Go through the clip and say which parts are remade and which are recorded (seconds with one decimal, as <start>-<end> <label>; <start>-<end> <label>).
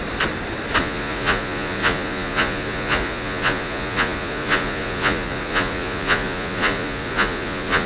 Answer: 0.0-0.8 recorded; 0.8-7.9 remade